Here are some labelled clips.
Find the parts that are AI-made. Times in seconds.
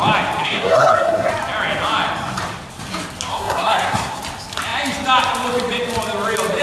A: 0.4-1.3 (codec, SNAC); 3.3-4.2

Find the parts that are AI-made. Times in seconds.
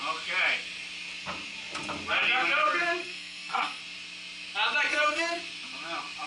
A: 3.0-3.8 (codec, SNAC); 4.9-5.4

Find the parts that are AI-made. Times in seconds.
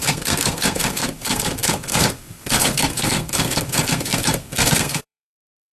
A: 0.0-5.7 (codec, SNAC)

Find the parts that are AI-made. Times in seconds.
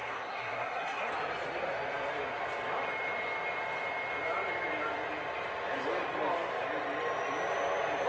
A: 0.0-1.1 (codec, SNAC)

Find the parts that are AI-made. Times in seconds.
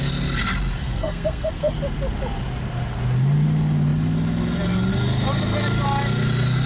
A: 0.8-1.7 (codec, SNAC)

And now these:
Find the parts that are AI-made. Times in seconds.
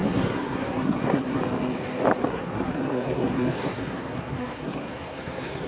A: 0.0-1.4 (codec, SNAC); 2.2-5.7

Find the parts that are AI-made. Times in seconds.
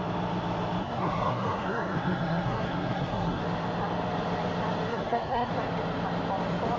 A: 0.8-3.4 (codec, SNAC); 4.9-5.5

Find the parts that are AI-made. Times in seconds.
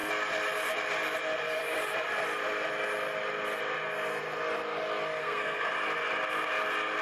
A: 5.2-5.7 (codec, SNAC)